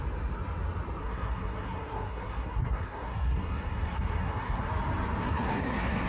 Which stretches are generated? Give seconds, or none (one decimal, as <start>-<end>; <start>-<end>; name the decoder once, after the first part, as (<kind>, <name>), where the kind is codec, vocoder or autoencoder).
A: 1.0-4.7 (codec, SNAC); 5.2-6.1